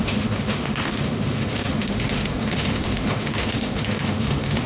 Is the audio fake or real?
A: fake